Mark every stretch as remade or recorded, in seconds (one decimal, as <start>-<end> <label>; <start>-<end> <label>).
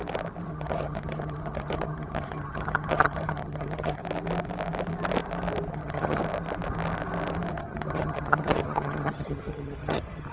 0.0-0.5 recorded; 0.5-4.0 remade; 4.0-5.7 recorded; 5.7-6.2 remade; 6.2-7.5 recorded; 7.5-10.3 remade